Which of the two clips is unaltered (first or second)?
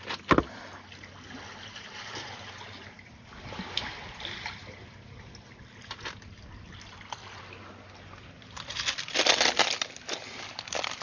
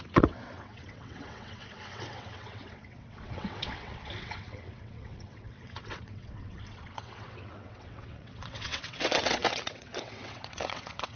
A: first